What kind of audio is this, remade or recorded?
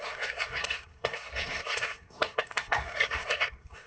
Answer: remade